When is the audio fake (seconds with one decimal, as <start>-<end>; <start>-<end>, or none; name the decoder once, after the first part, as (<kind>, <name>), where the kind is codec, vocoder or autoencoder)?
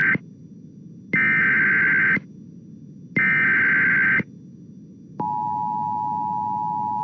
none